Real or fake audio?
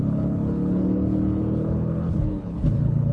fake